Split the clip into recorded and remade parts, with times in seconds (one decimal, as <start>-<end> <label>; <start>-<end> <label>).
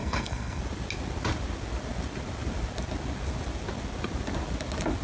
0.0-0.6 remade; 0.6-5.0 recorded